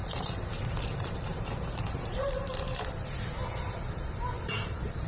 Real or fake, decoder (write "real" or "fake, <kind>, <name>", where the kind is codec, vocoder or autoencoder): fake, vocoder, BigVGAN v2